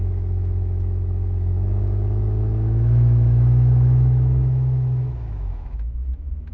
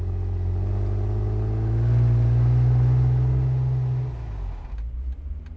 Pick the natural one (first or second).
second